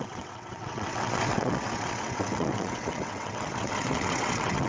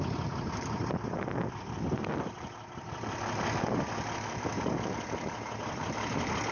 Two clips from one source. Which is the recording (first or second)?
second